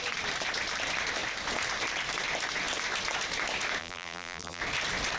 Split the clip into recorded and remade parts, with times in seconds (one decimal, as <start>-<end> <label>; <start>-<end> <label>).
0.0-3.8 recorded; 3.8-4.6 remade; 4.6-5.2 recorded